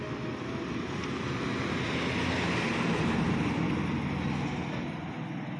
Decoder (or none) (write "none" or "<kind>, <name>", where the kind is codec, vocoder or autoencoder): none